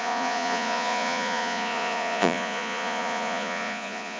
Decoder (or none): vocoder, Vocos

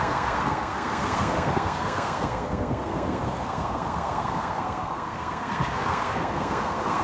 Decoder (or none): codec, SNAC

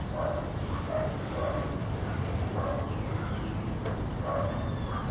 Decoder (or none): none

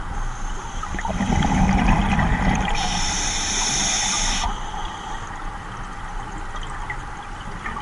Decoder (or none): none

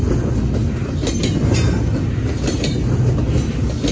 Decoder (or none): none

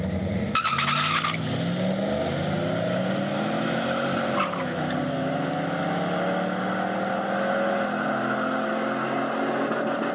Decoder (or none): none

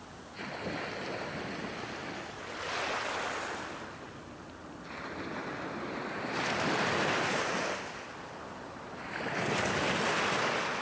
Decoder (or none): none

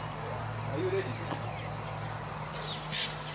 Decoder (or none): none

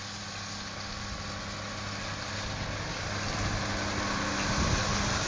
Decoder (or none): none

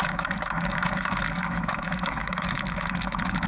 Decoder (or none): autoencoder, DAC-VAE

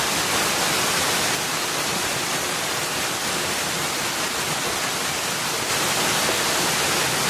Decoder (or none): none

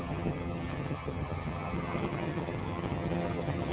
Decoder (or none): vocoder, HiFi-GAN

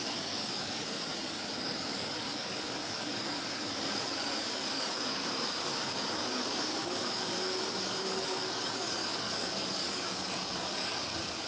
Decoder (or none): codec, DAC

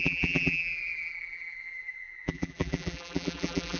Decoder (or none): vocoder, BigVGAN v2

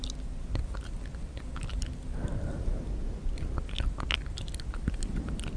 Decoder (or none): none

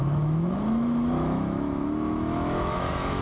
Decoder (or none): autoencoder, DAC-VAE